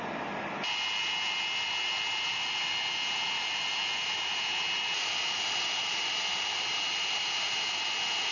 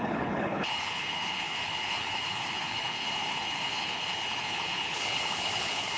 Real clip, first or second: first